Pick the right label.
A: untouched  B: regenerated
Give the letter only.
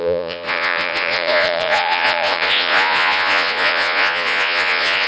B